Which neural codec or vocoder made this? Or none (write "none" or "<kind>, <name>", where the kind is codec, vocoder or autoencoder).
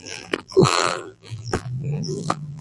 vocoder, BigVGAN v2